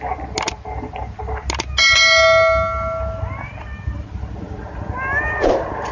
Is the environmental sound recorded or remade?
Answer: recorded